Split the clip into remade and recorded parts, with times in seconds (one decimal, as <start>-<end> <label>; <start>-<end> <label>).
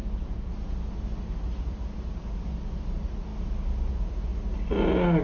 0.0-5.2 recorded